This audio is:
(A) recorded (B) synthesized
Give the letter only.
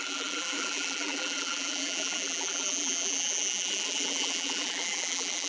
B